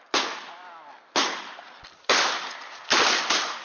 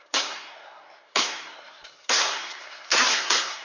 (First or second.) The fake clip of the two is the second